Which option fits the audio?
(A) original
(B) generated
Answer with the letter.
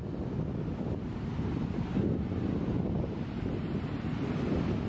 A